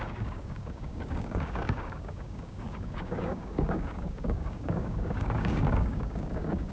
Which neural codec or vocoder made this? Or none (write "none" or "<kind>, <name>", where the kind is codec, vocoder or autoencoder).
codec, DAC